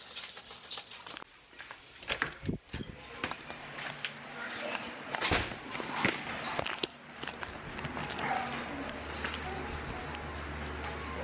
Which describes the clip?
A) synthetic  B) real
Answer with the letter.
B